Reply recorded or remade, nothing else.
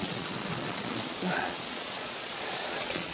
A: remade